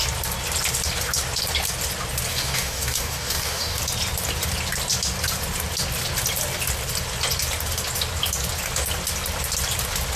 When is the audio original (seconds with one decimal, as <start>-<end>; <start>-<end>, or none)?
0.0-2.3; 3.8-10.2